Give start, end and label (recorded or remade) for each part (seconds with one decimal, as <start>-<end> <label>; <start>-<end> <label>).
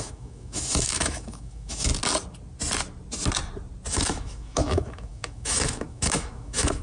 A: 0.0-1.9 remade; 1.9-3.9 recorded; 3.9-6.8 remade